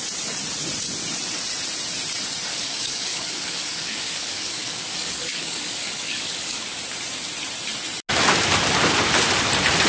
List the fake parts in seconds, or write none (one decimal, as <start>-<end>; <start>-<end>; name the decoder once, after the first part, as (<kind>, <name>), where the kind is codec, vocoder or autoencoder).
2.5-6.8 (codec, DAC)